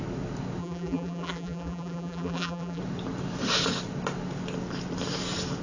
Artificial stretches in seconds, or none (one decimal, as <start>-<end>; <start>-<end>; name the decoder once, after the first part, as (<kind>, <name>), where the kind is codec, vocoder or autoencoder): 0.6-2.8 (vocoder, BigVGAN v2)